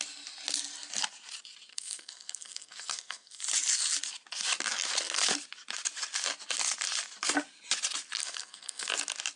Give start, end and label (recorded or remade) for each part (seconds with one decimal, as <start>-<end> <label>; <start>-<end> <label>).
0.0-1.7 recorded; 1.7-3.4 remade; 3.4-8.2 recorded; 8.2-8.9 remade; 8.9-9.4 recorded